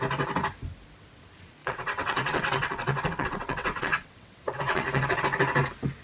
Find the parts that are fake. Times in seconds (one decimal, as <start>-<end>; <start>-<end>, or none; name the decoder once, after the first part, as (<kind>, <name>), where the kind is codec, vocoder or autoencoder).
1.6-5.2 (vocoder, WaveNeXt)